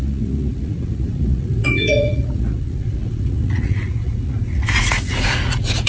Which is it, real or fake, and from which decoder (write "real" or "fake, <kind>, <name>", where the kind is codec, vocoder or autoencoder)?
fake, vocoder, Vocos